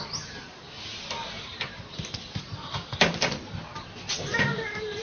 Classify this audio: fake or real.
real